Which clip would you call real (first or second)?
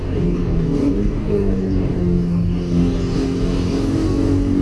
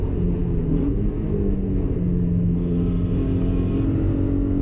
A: second